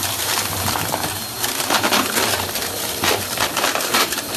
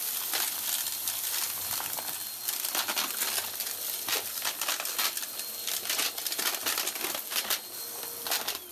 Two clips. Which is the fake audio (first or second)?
first